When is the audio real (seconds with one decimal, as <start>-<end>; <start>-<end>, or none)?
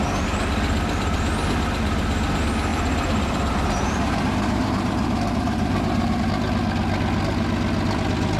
0.0-2.7; 6.2-8.4